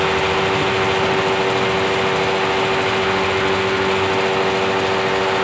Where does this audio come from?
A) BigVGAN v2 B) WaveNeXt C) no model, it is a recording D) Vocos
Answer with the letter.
C